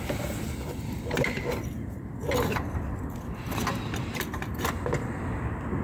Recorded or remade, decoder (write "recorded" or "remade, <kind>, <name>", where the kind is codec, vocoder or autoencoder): recorded